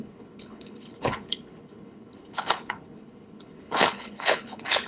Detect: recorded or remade remade